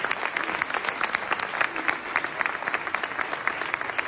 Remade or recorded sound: recorded